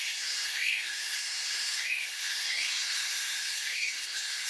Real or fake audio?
fake